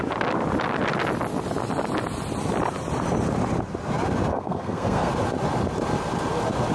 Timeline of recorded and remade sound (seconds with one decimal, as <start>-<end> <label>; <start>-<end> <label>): 0.0-4.3 recorded; 4.3-5.1 remade; 5.1-6.7 recorded